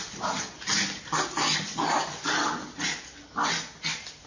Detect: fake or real real